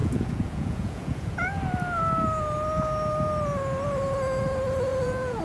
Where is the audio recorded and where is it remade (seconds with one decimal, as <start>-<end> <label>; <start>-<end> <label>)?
0.0-1.6 remade; 1.6-4.9 recorded; 4.9-5.4 remade